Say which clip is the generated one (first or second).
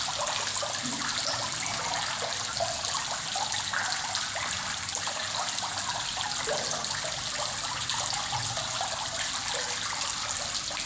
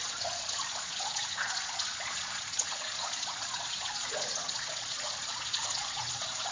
second